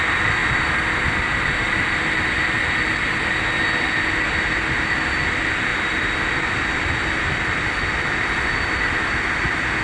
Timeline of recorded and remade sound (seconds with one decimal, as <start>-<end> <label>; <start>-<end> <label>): 0.0-9.8 recorded